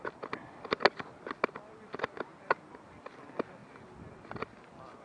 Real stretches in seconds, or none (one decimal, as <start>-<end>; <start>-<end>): 0.0-5.0